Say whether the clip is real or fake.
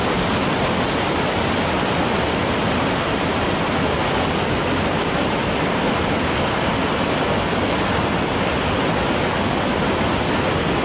real